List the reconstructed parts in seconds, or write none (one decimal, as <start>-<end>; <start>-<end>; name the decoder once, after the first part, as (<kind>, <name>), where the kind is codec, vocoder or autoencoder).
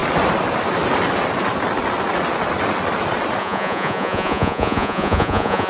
3.4-5.7 (vocoder, Vocos)